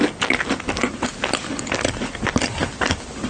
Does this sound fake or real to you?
real